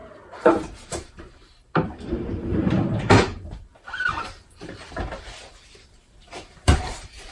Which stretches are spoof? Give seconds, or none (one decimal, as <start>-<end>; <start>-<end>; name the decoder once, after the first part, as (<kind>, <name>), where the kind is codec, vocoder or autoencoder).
0.0-7.3 (vocoder, BigVGAN v2)